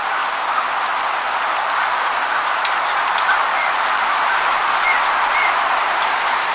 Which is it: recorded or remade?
recorded